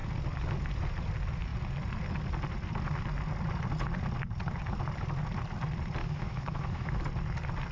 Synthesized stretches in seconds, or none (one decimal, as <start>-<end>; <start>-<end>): 6.0-7.0